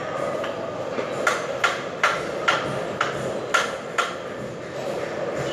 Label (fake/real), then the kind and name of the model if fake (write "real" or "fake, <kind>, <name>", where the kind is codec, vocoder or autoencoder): real